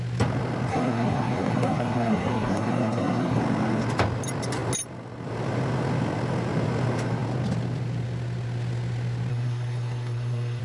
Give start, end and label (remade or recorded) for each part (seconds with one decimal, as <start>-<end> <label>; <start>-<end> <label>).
0.0-0.7 recorded; 0.7-3.4 remade; 3.4-9.3 recorded; 9.3-10.6 remade